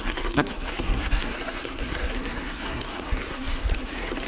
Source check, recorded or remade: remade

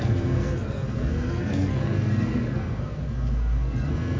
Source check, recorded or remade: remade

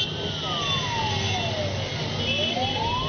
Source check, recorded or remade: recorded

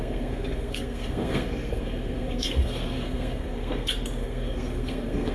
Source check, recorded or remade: remade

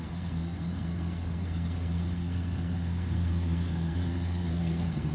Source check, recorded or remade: remade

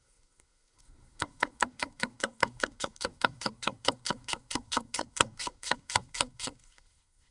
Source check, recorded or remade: remade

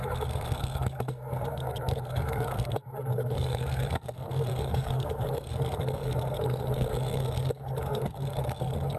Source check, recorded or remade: remade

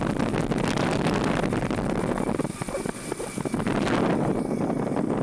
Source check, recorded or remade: recorded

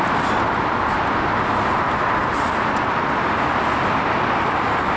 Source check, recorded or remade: recorded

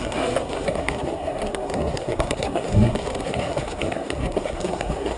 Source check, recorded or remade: remade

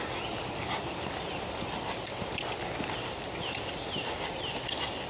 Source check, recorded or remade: recorded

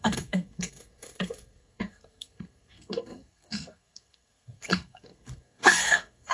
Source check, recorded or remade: remade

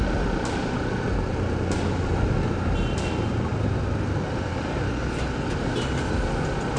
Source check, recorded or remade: recorded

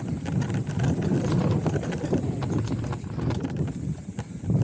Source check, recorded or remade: recorded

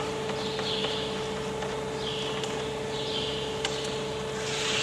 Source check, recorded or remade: recorded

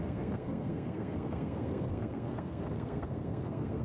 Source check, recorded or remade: remade